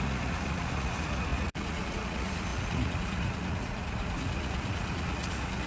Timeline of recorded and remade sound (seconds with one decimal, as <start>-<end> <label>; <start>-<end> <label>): 0.0-5.7 remade